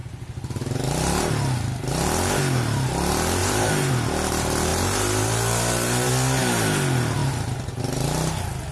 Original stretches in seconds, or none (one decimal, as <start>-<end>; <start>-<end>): 0.0-3.4; 3.9-4.7; 6.1-7.2; 7.8-8.7